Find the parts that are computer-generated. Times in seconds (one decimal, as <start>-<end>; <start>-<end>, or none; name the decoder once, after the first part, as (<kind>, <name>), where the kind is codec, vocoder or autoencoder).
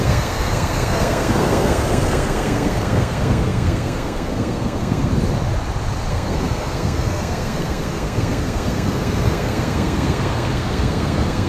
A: 0.0-5.1 (codec, SNAC); 6.1-11.5